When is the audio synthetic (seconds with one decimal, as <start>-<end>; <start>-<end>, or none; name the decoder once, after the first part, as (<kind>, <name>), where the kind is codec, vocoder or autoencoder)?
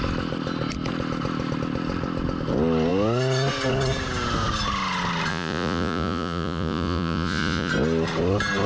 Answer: 5.3-7.7 (vocoder, Vocos)